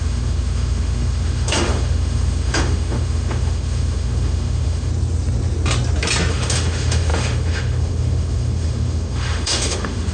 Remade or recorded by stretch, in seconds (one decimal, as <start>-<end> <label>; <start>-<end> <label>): 0.0-4.9 remade; 4.9-6.3 recorded; 6.3-10.1 remade

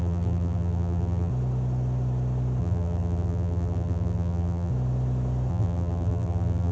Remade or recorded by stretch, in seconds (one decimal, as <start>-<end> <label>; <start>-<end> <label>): 0.0-1.3 remade; 1.3-2.6 recorded; 2.6-4.7 remade; 4.7-5.5 recorded; 5.5-6.7 remade

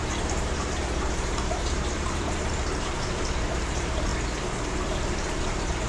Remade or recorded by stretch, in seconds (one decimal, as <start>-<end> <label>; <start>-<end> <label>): 0.0-4.1 remade; 4.1-5.4 recorded; 5.4-5.9 remade

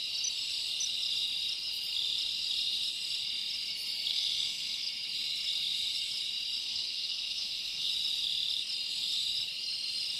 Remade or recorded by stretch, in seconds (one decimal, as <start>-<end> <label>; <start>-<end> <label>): 0.0-4.1 recorded; 4.1-4.9 remade; 4.9-6.6 recorded; 6.6-7.9 remade; 7.9-10.2 recorded

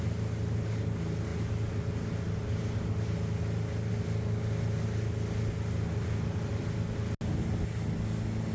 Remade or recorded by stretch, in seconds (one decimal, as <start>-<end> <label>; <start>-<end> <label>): 0.0-8.5 recorded

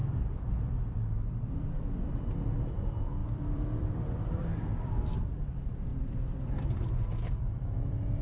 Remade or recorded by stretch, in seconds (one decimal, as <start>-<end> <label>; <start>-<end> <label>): 0.0-8.2 remade

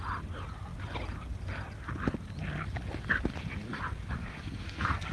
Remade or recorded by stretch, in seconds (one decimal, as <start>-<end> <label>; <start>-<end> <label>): 0.0-4.2 recorded; 4.2-5.1 remade